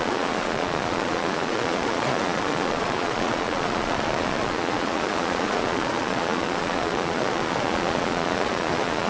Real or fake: fake